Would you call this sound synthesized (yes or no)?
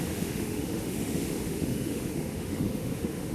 yes